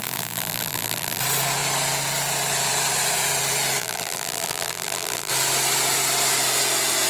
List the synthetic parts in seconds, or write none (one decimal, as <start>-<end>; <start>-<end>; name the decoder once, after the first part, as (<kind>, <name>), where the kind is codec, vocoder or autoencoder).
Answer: 0.0-1.2 (vocoder, BigVGAN v2); 3.8-5.3

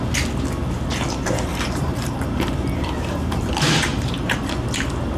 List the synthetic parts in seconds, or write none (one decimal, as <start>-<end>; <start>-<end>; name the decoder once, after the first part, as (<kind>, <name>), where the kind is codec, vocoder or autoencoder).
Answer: 1.5-4.6 (vocoder, BigVGAN v2)

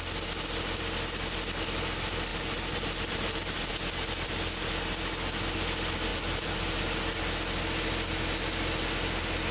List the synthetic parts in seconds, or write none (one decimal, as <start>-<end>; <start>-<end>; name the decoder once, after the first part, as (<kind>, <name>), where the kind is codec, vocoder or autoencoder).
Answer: 2.3-3.7 (vocoder, BigVGAN v2); 6.1-6.8

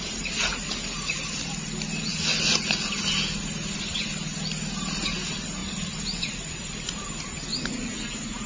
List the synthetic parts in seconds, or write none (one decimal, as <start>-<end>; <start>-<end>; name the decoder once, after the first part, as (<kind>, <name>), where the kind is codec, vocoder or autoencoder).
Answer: none

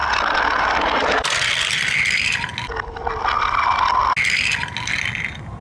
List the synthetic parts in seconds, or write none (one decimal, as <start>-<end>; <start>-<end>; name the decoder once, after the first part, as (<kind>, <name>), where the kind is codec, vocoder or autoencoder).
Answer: 0.6-2.5 (vocoder, BigVGAN v2)

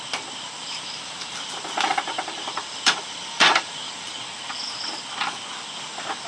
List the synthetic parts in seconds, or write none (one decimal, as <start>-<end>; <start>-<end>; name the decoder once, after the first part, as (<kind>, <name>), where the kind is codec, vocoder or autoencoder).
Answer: 0.6-4.2 (vocoder, BigVGAN v2)

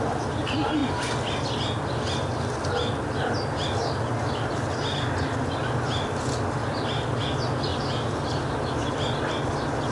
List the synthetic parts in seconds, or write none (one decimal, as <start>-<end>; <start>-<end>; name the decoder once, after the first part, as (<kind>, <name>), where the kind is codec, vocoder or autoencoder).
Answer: 7.7-8.9 (vocoder, BigVGAN v2)